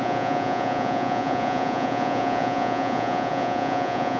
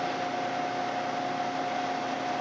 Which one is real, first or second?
second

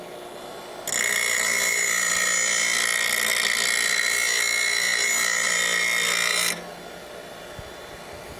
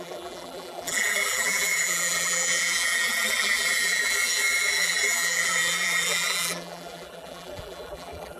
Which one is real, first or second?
first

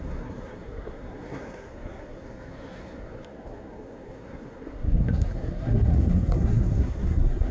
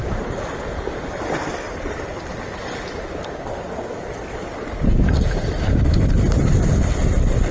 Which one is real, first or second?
second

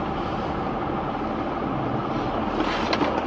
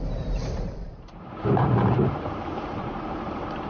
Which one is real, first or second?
first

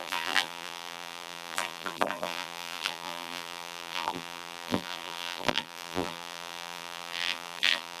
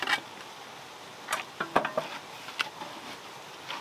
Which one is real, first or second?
second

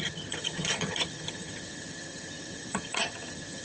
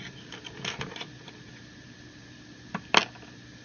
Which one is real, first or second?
second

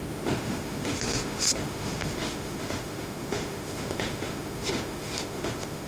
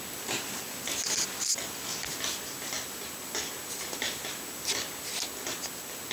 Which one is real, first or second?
second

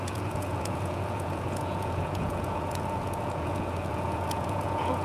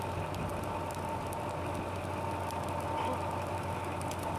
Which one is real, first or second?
second